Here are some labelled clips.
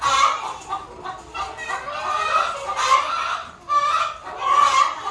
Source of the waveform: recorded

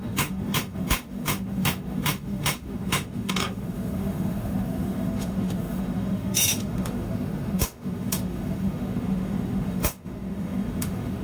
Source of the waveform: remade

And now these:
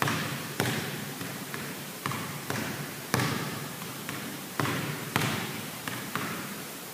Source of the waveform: remade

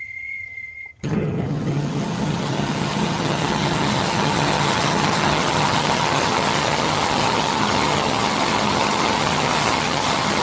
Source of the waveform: remade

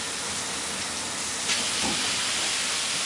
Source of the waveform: recorded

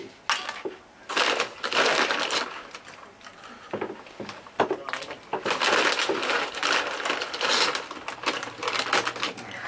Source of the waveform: recorded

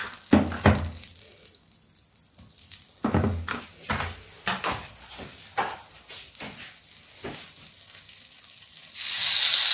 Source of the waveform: recorded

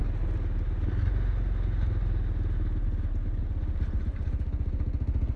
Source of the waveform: recorded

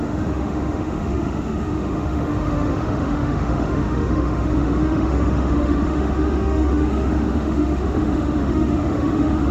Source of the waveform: remade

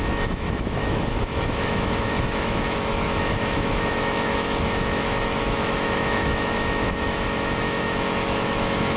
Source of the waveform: remade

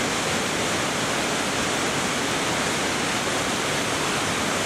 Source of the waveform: recorded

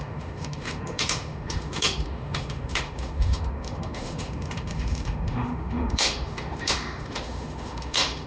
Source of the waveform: remade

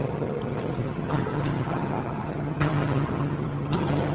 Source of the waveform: remade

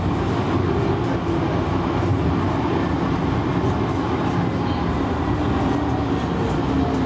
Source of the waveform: recorded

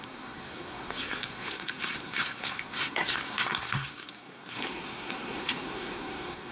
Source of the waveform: remade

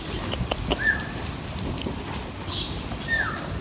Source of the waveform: recorded